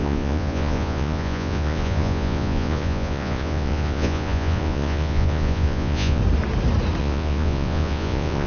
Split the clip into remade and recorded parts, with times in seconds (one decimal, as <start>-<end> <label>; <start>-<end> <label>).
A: 0.0-6.2 remade; 6.2-7.0 recorded; 7.0-8.5 remade